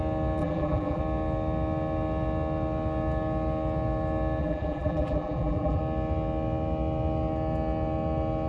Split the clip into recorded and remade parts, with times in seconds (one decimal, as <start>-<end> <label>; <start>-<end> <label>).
0.0-0.4 recorded; 0.4-1.0 remade; 1.0-4.4 recorded; 4.4-5.8 remade; 5.8-8.5 recorded